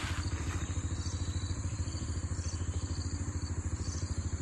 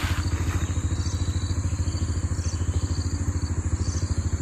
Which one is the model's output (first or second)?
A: first